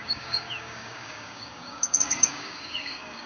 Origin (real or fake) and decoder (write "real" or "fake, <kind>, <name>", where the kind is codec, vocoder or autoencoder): fake, codec, DAC